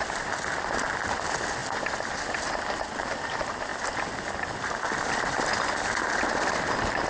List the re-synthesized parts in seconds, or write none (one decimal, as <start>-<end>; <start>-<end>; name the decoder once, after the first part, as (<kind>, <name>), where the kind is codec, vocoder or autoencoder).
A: none